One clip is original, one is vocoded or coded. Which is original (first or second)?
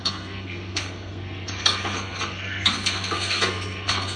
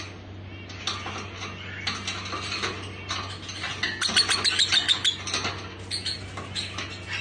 second